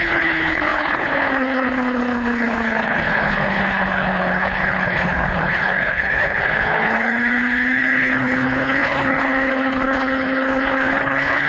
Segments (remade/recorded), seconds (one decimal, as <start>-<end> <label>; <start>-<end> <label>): 0.0-11.5 remade